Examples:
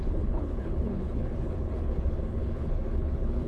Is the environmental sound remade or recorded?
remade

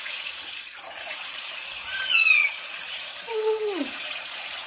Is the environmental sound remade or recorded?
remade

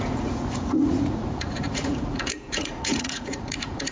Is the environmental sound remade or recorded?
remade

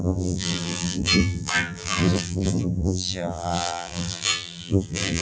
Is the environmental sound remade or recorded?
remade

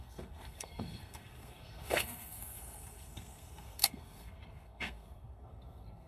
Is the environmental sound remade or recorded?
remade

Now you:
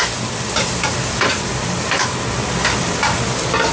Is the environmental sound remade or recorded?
recorded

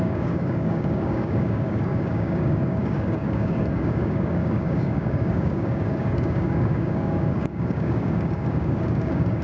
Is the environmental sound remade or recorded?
remade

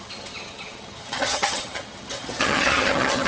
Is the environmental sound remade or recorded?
remade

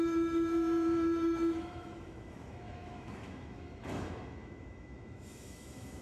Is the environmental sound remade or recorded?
remade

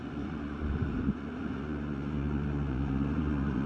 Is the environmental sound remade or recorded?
remade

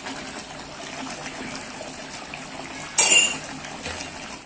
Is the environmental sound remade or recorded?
recorded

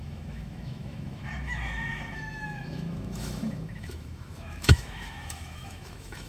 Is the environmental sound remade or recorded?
remade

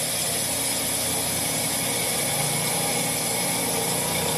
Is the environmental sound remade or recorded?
recorded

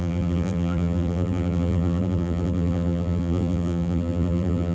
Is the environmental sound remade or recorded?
remade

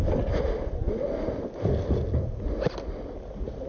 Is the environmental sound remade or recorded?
recorded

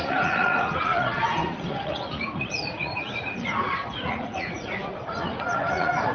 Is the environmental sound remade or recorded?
remade